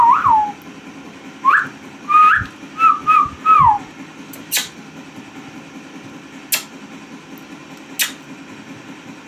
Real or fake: real